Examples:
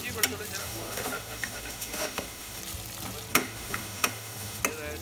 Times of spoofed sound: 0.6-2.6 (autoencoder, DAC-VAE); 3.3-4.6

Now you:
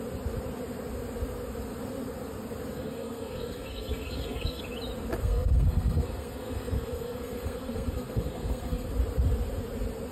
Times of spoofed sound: 2.7-4.6 (codec, SNAC); 5.2-8.9

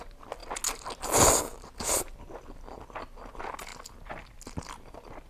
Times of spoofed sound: none

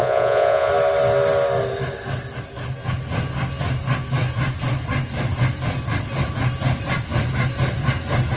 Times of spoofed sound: 0.0-0.7 (vocoder, Vocos)

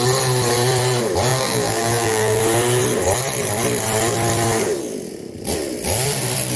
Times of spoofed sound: 1.3-2.4 (vocoder, BigVGAN v2)

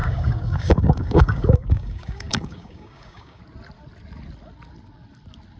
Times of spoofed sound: 0.0-3.4 (codec, DAC)

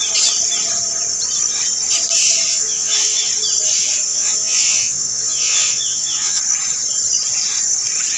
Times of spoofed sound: 2.5-3.3 (vocoder, WaveNeXt); 4.1-6.4

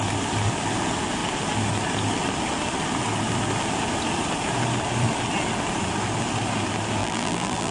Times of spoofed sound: 7.0-7.7 (vocoder, BigVGAN v2)